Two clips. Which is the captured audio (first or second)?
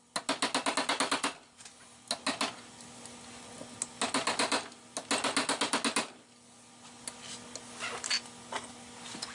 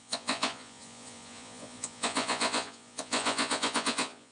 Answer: first